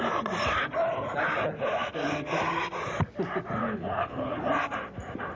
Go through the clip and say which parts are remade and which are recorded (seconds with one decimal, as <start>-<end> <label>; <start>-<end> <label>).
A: 0.0-3.6 recorded; 3.6-4.4 remade; 4.4-5.4 recorded